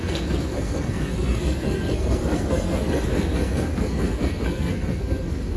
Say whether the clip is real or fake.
fake